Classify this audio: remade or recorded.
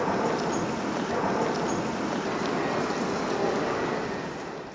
recorded